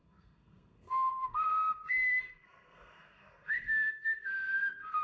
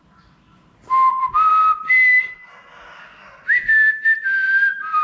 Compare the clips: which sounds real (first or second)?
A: second